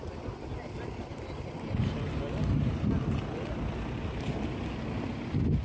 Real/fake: real